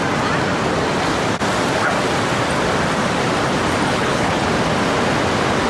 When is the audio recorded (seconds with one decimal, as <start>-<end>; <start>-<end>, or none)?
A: 0.0-3.9; 4.5-5.7